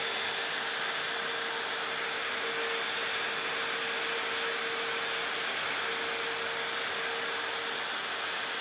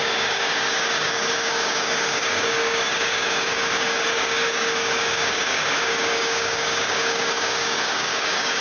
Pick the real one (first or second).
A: first